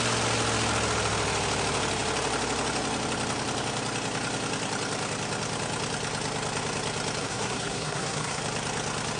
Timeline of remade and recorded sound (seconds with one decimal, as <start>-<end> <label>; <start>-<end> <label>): 0.0-7.2 recorded; 7.2-8.4 remade; 8.4-9.2 recorded